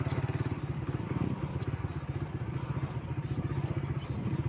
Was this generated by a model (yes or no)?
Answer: no